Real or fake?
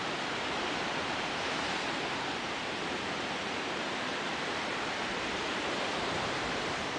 fake